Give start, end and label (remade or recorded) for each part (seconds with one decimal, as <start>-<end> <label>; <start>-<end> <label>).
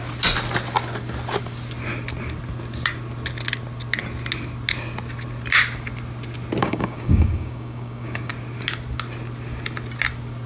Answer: 0.0-6.6 recorded; 6.6-8.3 remade; 8.3-10.5 recorded